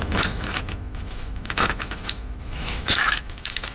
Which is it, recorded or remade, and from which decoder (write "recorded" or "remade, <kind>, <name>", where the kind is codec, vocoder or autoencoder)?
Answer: remade, autoencoder, DAC-VAE